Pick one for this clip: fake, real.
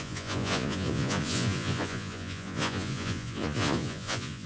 fake